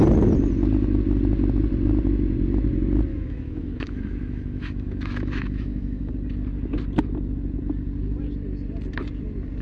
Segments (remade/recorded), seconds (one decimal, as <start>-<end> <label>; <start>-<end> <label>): 0.0-3.1 recorded; 3.1-6.1 remade; 6.1-9.6 recorded